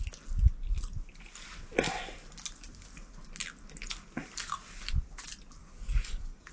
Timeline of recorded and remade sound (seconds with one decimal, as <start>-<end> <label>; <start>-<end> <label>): 0.0-5.6 recorded; 5.6-6.5 remade